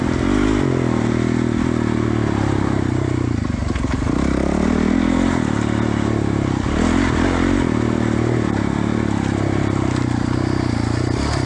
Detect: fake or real real